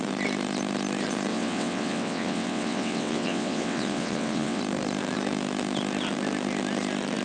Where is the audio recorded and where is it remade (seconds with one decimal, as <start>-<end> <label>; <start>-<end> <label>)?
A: 0.0-1.3 recorded; 1.3-4.6 remade; 4.6-7.2 recorded